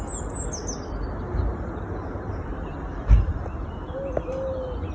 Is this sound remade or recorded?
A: recorded